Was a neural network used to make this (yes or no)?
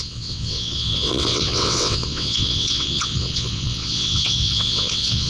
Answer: yes